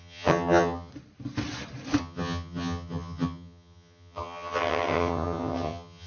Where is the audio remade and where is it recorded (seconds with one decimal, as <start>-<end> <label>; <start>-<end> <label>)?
0.0-0.9 remade; 0.9-2.0 recorded; 2.0-6.1 remade